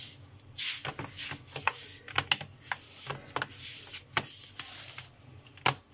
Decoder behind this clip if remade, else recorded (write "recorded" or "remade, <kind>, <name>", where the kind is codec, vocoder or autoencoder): recorded